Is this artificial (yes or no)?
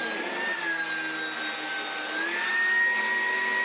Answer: no